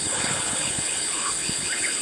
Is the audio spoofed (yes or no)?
yes